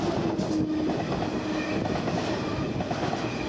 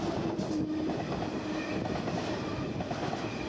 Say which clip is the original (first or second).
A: first